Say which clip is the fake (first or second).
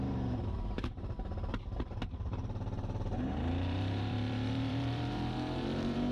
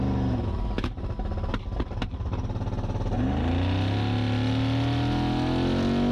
first